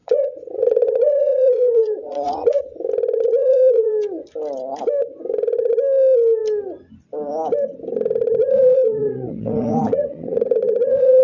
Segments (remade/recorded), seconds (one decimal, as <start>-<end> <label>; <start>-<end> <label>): 0.0-2.6 remade; 2.6-3.4 recorded; 3.4-3.9 remade; 3.9-8.4 recorded; 8.4-11.2 remade